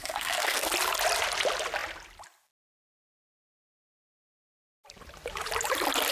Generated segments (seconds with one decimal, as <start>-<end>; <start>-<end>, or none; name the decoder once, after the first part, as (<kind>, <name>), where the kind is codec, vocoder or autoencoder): 0.0-0.7 (codec, SNAC)